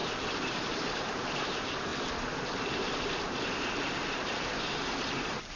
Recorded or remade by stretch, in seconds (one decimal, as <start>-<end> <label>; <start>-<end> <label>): 0.0-1.9 remade; 1.9-3.6 recorded; 3.6-5.6 remade